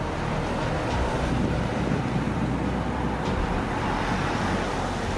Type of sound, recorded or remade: recorded